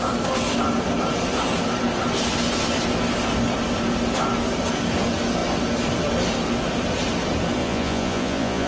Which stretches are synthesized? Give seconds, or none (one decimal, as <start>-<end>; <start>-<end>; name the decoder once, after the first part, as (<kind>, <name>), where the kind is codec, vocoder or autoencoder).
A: 7.6-8.7 (vocoder, Vocos)